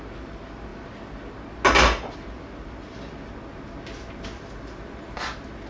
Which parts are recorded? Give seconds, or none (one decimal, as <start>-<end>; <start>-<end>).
0.0-5.7